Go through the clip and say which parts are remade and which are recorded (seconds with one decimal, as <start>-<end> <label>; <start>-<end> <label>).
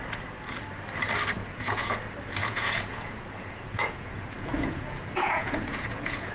0.0-1.4 recorded; 1.4-2.0 remade; 2.0-2.4 recorded; 2.4-6.3 remade